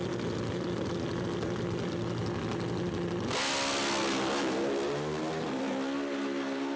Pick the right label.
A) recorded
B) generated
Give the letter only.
A